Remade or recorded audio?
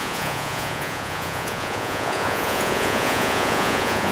remade